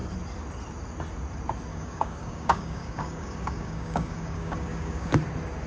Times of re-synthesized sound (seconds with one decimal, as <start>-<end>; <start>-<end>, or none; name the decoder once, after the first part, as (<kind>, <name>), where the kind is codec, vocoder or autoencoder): 1.7-5.1 (codec, DAC)